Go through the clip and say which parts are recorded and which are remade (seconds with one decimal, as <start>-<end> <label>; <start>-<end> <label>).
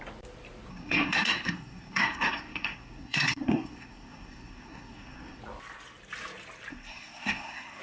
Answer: 0.0-0.7 recorded; 0.7-5.4 remade; 5.4-6.7 recorded; 6.7-7.8 remade